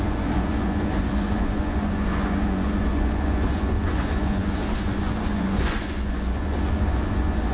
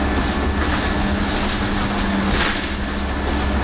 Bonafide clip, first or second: second